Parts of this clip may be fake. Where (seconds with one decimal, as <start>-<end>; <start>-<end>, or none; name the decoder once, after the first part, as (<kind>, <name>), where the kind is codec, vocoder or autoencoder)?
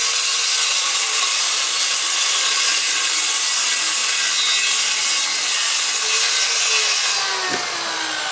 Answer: 0.7-2.0 (vocoder, BigVGAN v2)